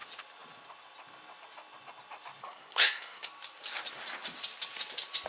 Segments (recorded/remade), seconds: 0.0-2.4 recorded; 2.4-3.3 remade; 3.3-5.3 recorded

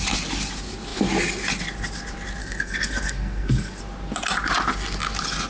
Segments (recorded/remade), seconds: 0.0-2.4 recorded; 2.4-3.8 remade; 3.8-5.5 recorded

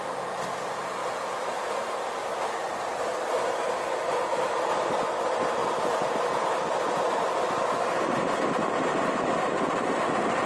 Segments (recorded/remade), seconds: 0.0-10.5 recorded

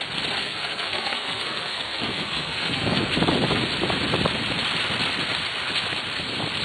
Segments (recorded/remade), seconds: 0.0-0.4 recorded; 0.4-3.1 remade; 3.1-6.6 recorded

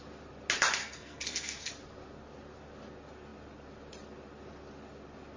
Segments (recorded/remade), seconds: 0.0-0.8 recorded; 0.8-1.7 remade; 1.7-5.4 recorded

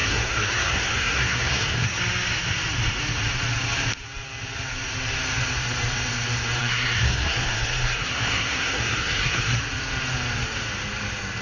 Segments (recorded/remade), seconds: 0.0-2.0 remade; 2.0-6.6 recorded; 6.6-9.6 remade; 9.6-11.4 recorded

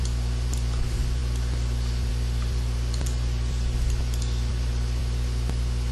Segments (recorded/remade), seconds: 0.0-5.9 recorded

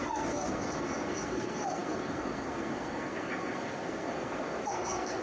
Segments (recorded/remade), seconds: 0.0-5.2 remade